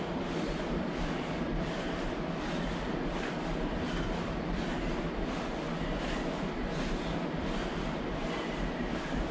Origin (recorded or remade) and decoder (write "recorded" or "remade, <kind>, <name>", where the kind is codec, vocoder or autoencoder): recorded